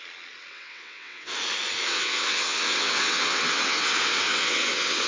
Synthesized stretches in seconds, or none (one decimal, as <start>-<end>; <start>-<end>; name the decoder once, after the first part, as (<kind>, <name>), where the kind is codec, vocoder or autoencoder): 0.5-1.3 (vocoder, WaveNeXt); 1.9-5.1